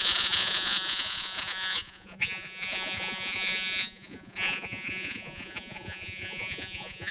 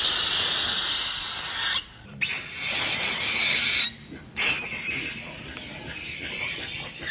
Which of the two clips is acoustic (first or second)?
second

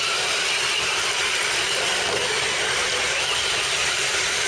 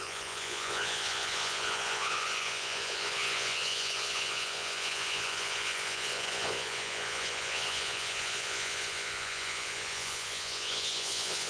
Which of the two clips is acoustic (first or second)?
first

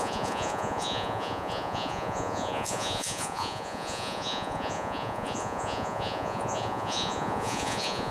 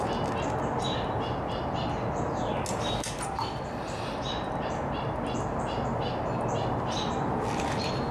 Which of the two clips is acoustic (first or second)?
second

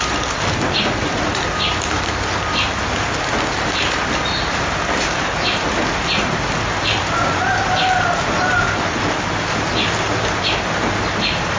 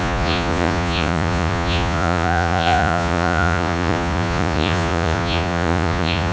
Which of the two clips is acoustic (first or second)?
first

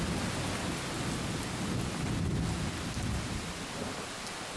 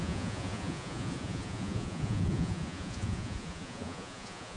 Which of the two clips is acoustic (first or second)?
first